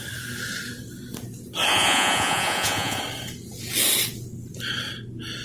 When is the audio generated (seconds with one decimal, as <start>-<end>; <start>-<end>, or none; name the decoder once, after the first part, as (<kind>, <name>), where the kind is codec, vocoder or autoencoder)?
1.7-3.0 (vocoder, Vocos)